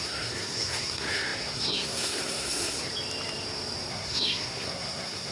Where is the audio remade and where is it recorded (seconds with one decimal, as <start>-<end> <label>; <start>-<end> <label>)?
0.0-2.9 remade; 2.9-3.9 recorded; 3.9-5.3 remade